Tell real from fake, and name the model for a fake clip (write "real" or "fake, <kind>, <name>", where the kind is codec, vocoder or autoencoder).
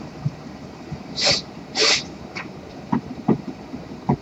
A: fake, vocoder, BigVGAN v2